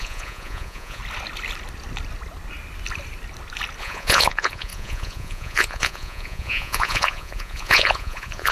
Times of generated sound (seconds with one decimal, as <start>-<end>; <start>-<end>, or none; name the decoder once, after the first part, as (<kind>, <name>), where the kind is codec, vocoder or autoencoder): 0.0-1.0 (vocoder, Vocos); 3.8-8.5